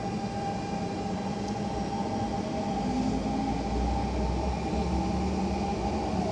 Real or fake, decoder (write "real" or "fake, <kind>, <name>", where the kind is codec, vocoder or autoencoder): real